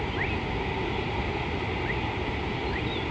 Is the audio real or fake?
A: real